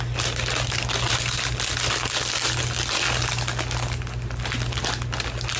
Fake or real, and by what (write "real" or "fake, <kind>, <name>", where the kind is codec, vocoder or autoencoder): real